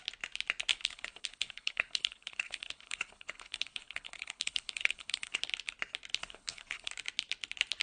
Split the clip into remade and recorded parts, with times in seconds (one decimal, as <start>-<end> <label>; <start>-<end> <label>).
0.0-0.7 recorded; 0.7-5.4 remade; 5.4-6.2 recorded; 6.2-6.9 remade; 6.9-7.8 recorded